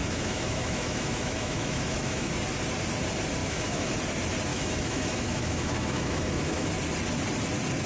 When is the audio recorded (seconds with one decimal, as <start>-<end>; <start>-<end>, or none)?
2.3-3.4; 3.9-4.5; 6.7-7.9